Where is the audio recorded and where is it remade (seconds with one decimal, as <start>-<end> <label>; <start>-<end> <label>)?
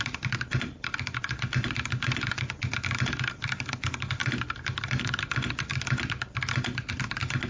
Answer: 0.0-7.5 recorded